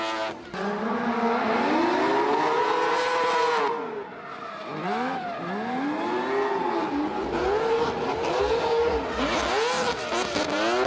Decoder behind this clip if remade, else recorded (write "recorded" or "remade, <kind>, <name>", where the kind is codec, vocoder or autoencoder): recorded